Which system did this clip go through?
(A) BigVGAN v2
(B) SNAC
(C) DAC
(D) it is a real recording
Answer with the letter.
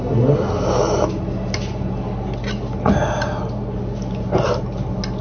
D